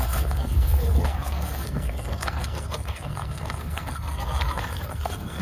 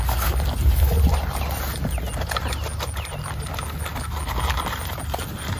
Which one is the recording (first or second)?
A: second